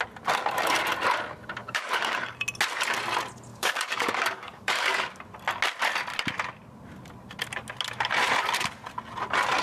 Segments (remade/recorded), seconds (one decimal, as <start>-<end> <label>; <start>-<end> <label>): 0.0-1.6 recorded; 1.6-2.2 remade; 2.2-3.5 recorded; 3.5-5.2 remade; 5.2-9.6 recorded